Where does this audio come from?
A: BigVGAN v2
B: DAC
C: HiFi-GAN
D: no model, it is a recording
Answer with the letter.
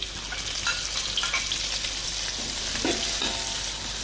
D